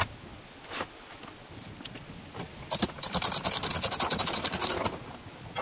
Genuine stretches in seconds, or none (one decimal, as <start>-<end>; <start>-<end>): 0.0-3.7; 4.7-5.6